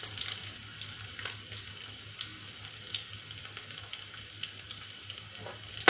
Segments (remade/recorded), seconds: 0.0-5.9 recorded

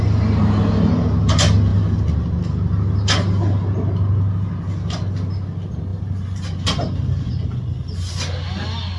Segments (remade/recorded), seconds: 0.0-9.0 recorded

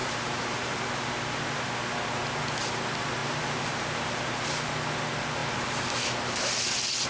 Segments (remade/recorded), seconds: 0.0-0.8 remade; 0.8-3.2 recorded; 3.2-4.2 remade; 4.2-7.1 recorded

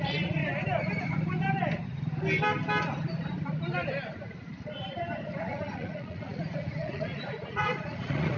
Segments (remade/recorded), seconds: 0.0-0.4 remade; 0.4-5.4 recorded; 5.4-8.4 remade